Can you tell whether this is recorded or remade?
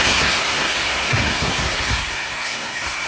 remade